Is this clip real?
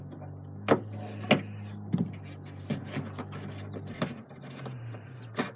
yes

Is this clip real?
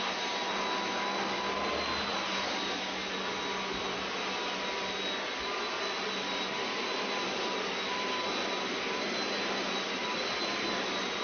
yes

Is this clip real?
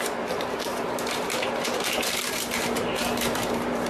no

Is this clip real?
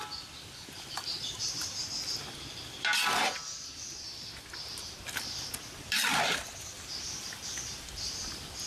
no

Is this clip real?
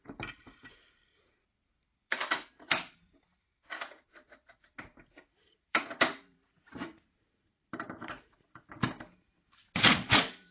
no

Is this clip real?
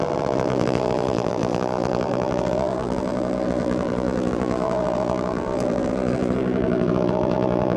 no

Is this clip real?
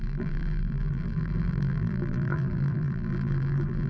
no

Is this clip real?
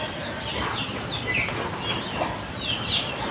yes